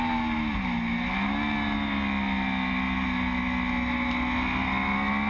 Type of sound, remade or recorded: recorded